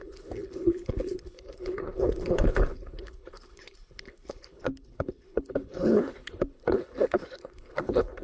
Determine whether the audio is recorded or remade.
remade